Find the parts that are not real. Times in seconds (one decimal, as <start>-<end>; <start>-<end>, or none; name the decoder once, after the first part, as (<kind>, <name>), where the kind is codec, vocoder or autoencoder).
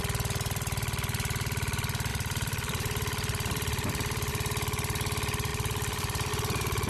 2.1-4.3 (vocoder, BigVGAN v2); 5.5-6.3